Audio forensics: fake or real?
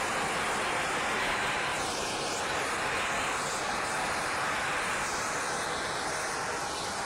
real